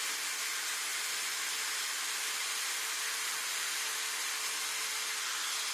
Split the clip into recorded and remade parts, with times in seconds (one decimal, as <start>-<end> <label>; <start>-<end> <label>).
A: 0.0-0.9 recorded; 0.9-4.3 remade; 4.3-5.7 recorded